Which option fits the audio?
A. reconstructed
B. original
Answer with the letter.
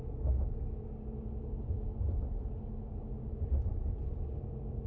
B